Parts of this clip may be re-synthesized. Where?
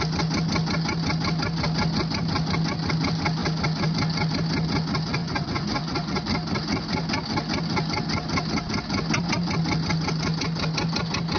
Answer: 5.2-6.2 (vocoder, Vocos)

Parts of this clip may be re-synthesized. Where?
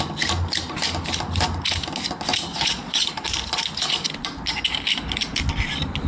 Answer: 2.5-3.1 (vocoder, Vocos)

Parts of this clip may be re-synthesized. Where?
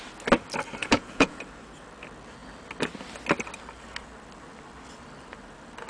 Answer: 0.8-1.4 (vocoder, Vocos)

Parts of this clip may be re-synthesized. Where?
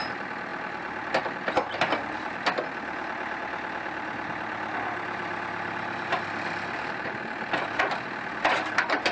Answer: none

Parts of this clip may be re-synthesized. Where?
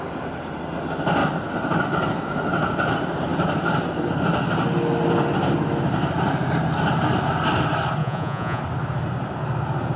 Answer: 8.0-8.6 (vocoder, Vocos)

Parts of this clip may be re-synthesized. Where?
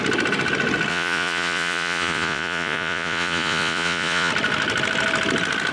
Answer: 0.9-4.3 (vocoder, Vocos)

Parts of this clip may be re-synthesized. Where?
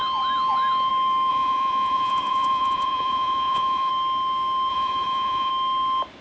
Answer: 1.3-3.9 (vocoder, Vocos); 4.7-5.5